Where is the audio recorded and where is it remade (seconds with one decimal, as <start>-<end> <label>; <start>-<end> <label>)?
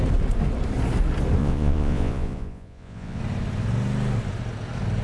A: 0.0-1.4 recorded; 1.4-3.2 remade; 3.2-5.0 recorded